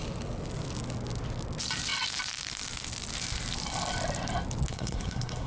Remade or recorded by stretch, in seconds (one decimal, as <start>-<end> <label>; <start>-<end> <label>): 0.0-4.7 recorded; 4.7-5.5 remade